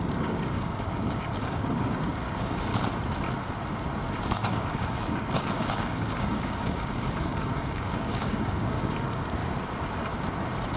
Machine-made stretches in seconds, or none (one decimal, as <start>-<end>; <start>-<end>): 0.0-2.7; 4.2-9.4